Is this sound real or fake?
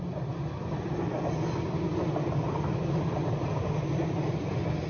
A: real